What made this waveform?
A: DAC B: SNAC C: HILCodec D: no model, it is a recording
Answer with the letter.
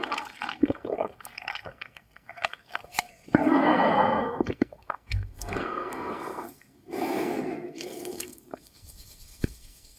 B